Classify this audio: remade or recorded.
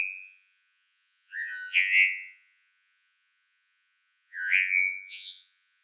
remade